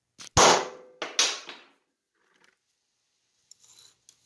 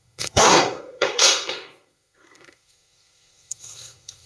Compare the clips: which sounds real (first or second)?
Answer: first